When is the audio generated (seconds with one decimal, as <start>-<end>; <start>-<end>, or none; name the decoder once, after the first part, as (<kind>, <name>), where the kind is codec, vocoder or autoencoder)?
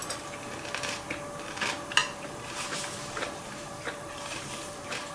2.0-5.1 (vocoder, BigVGAN v2)